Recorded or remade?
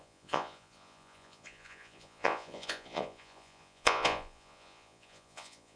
remade